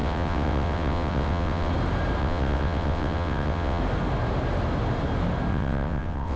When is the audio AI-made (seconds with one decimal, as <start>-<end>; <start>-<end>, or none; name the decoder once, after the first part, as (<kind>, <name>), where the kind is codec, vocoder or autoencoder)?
0.0-1.7 (vocoder, WaveNeXt); 2.2-3.8; 5.5-6.4